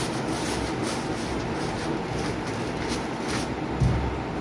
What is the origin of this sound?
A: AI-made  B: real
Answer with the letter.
B